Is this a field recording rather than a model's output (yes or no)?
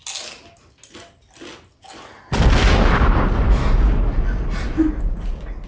yes